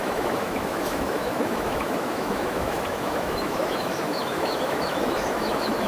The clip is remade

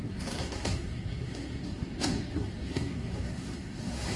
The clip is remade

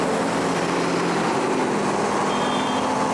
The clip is remade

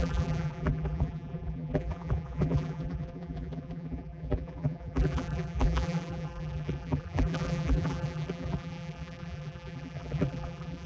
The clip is remade